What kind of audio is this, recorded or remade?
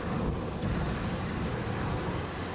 recorded